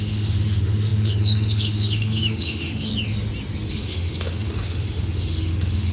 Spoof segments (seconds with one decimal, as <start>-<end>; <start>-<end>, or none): 0.0-2.9; 3.7-5.9

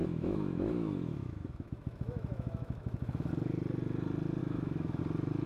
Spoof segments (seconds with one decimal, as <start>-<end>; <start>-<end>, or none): 0.0-3.3; 4.4-5.0

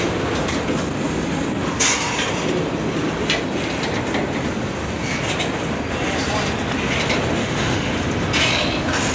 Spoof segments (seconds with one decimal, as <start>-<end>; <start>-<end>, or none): 7.4-7.9

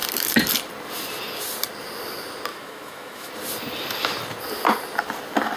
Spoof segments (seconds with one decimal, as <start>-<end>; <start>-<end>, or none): 2.5-3.3

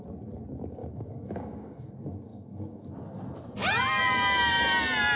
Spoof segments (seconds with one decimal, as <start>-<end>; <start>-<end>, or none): 0.8-1.9; 2.3-2.9

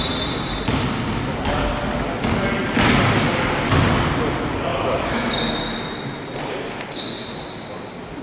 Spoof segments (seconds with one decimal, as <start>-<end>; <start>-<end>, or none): none

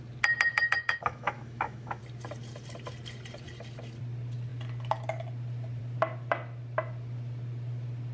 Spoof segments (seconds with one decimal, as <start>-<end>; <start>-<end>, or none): 0.5-2.0

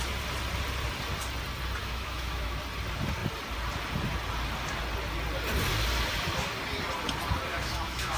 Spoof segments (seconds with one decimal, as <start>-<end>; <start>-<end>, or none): 1.8-2.6; 7.5-8.2